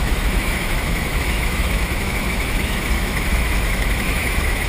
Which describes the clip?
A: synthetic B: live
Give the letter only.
A